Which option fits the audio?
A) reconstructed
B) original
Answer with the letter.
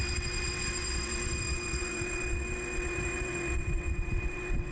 A